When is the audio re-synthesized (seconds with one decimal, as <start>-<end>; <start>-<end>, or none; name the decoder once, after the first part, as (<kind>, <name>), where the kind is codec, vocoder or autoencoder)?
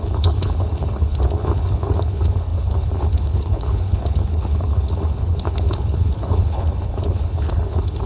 0.0-8.1 (codec, HILCodec)